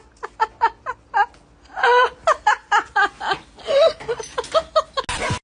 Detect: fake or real real